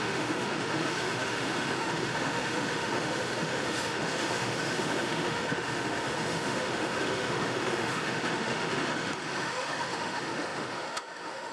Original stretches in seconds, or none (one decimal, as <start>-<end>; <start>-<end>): none